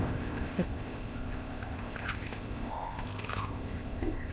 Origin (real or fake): fake